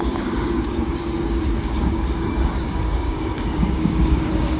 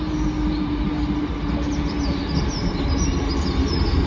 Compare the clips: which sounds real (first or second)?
second